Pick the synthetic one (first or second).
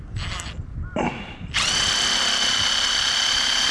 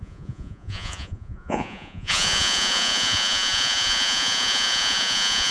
second